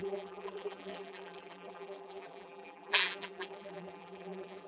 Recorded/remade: remade